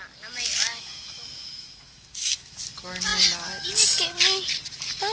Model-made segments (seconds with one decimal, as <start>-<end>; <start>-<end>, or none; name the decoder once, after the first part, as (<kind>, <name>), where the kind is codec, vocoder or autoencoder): 0.7-2.6 (autoencoder, DAC-VAE)